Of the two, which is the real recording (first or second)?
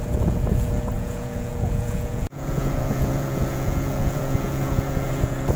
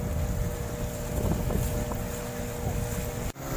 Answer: second